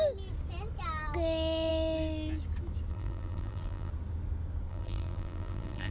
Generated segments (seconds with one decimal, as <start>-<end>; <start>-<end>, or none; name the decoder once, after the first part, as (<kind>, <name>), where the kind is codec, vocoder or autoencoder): 2.9-3.9 (vocoder, BigVGAN v2); 4.7-5.9